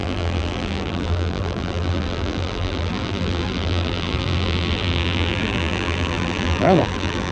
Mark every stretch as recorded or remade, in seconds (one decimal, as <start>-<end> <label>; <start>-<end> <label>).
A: 0.0-7.3 remade